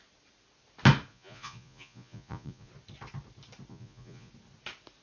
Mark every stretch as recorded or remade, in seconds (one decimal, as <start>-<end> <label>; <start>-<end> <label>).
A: 0.0-1.1 recorded; 1.1-2.7 remade; 2.7-3.7 recorded; 3.7-4.3 remade; 4.3-5.0 recorded